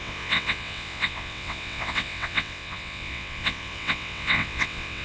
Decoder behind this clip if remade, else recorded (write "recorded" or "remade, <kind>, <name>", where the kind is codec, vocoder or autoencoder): remade, vocoder, WaveNeXt